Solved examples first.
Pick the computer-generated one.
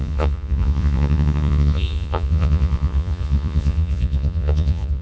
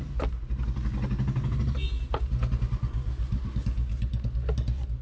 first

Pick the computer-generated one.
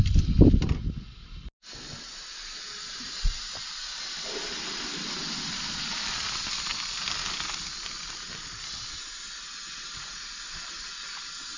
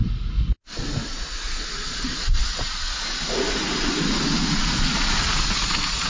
second